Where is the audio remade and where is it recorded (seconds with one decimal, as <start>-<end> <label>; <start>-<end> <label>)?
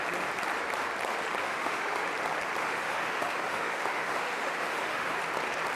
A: 0.0-1.4 recorded; 1.4-2.1 remade; 2.1-2.6 recorded; 2.6-5.2 remade; 5.2-5.8 recorded